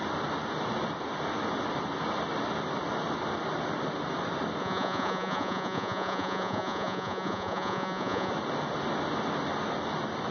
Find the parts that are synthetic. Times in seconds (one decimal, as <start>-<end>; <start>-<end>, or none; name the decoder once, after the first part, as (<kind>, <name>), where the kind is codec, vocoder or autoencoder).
4.6-8.3 (vocoder, Vocos)